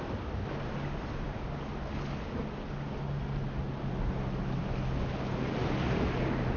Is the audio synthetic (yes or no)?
no